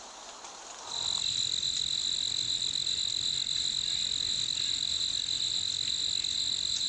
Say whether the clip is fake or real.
real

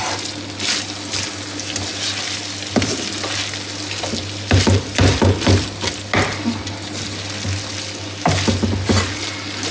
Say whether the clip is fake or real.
real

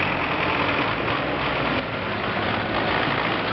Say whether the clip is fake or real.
real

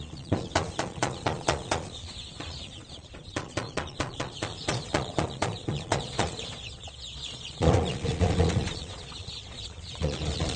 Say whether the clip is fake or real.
fake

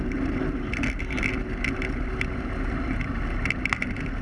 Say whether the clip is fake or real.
real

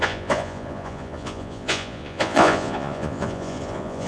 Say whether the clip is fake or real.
fake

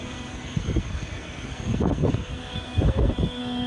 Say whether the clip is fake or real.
fake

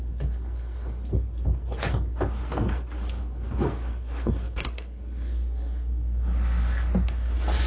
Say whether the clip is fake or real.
fake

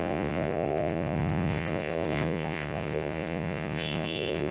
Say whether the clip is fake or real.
fake